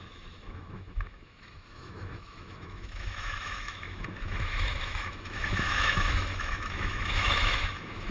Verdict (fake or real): fake